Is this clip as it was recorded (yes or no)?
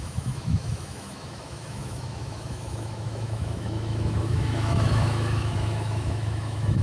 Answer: no